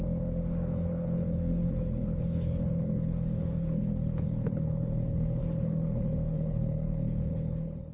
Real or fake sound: fake